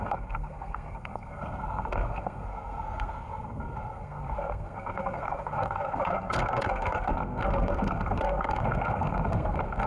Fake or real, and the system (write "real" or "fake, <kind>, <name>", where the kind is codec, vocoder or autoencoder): fake, codec, SNAC